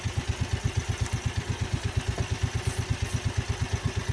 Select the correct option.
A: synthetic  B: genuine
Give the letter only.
B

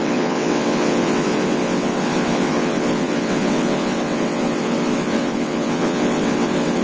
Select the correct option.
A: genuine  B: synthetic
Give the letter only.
B